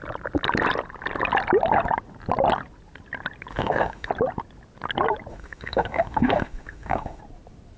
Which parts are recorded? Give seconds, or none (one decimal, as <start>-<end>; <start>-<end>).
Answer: 0.0-3.5; 4.1-5.3; 7.2-7.8